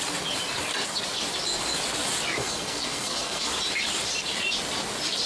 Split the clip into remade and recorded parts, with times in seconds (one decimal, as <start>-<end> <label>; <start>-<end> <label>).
0.0-2.4 recorded; 2.4-3.5 remade; 3.5-5.3 recorded